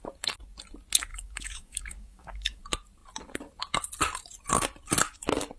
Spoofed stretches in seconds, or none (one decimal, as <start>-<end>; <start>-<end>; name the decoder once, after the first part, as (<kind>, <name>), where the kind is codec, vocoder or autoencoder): 1.1-2.6 (codec, DAC)